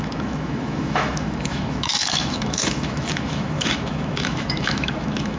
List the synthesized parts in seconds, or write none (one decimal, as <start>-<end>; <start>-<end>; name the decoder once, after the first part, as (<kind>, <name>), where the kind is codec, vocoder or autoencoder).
0.0-5.4 (autoencoder, DAC-VAE)